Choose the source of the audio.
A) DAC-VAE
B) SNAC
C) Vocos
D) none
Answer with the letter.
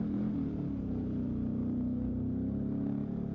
D